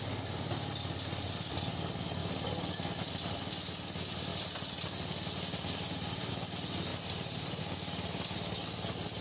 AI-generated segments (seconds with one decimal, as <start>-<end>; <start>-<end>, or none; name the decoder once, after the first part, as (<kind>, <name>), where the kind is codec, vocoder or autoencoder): 2.2-3.1 (vocoder, BigVGAN v2); 4.3-6.3; 6.9-7.6

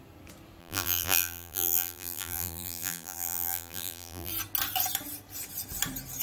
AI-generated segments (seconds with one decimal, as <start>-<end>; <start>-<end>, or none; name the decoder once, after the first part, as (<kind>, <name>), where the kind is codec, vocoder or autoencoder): 0.6-4.3 (vocoder, BigVGAN v2)

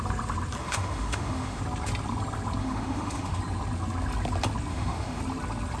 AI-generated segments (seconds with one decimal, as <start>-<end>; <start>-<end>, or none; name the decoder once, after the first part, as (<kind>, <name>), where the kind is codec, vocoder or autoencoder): 0.6-1.6 (autoencoder, DAC-VAE); 2.6-3.4; 4.7-5.2

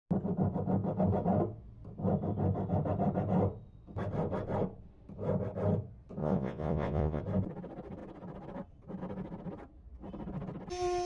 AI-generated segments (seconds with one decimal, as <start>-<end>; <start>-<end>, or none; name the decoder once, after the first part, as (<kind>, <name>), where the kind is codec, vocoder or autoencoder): 6.2-7.2 (vocoder, Vocos)

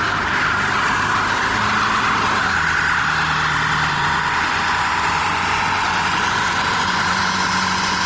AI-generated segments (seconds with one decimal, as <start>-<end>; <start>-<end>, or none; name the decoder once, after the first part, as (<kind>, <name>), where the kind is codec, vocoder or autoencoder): 3.9-8.1 (vocoder, Vocos)

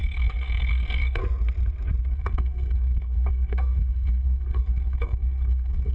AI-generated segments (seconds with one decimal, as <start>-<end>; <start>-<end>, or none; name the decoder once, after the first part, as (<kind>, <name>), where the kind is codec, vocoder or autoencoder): 0.0-1.2 (codec, SNAC); 2.0-5.9